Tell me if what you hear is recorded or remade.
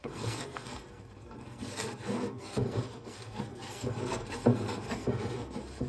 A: remade